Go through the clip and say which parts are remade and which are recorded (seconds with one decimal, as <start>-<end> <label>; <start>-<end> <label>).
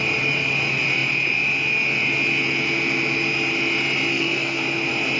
0.0-4.1 recorded; 4.1-4.6 remade; 4.6-5.2 recorded